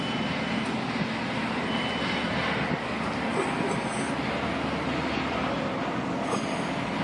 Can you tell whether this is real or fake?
real